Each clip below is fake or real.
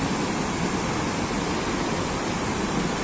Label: fake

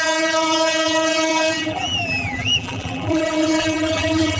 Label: fake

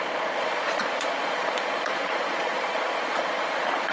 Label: fake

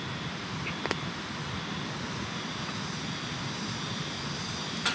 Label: real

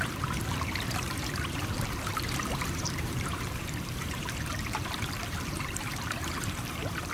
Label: fake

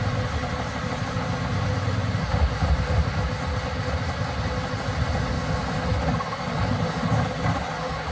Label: real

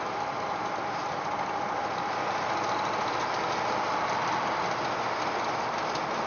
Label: real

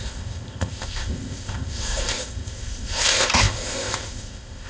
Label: fake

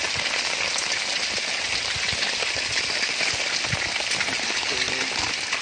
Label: real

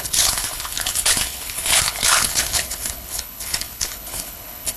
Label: fake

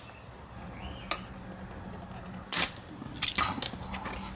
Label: real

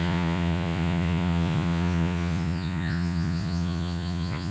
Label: fake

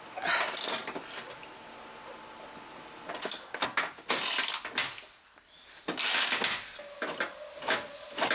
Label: real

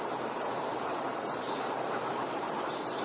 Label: fake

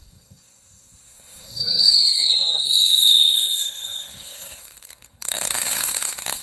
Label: fake